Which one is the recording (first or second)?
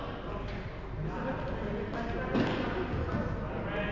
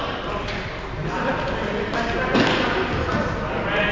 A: first